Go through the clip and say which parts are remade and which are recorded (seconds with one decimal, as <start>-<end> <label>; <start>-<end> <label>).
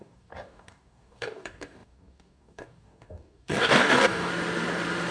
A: 0.0-4.3 remade; 4.3-5.1 recorded